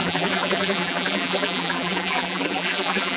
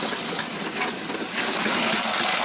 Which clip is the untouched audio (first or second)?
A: second